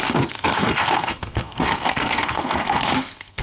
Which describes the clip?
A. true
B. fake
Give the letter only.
B